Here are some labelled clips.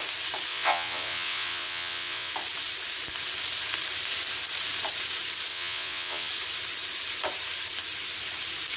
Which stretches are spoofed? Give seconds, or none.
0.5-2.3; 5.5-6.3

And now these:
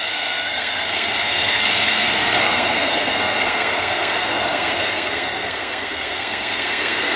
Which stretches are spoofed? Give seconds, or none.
0.0-7.2

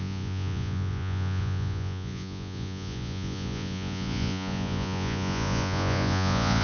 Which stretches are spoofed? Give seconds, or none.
0.0-6.6

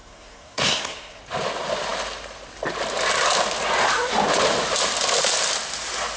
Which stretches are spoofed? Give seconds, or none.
0.0-1.2

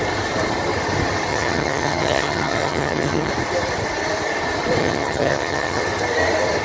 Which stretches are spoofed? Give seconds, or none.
1.3-3.3; 4.8-5.8

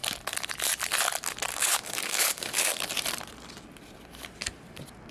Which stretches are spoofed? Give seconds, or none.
1.5-2.7

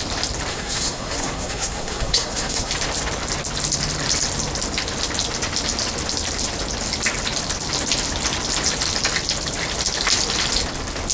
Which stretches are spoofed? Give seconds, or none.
0.5-2.7

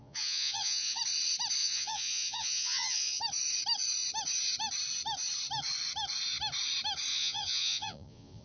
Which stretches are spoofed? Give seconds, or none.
0.0-1.0; 1.6-3.2; 7.1-8.4